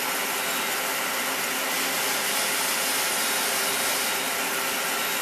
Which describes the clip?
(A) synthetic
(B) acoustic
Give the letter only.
B